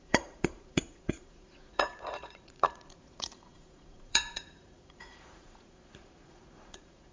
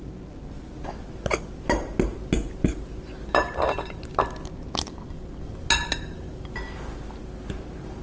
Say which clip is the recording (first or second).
second